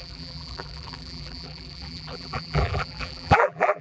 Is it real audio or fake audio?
fake